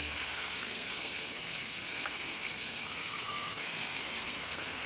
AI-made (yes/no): yes